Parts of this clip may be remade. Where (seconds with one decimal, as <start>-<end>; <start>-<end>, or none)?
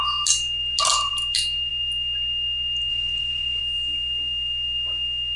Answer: 2.9-3.6